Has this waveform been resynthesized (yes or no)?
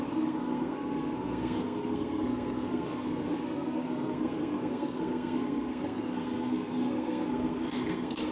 yes